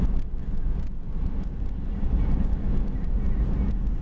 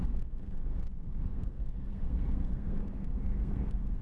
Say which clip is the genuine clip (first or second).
first